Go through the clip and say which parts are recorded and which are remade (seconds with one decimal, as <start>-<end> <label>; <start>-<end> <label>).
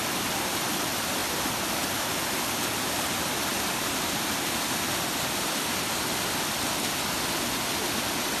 0.0-8.4 recorded